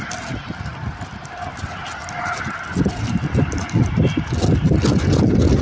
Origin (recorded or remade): recorded